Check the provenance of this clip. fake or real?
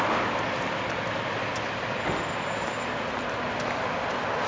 real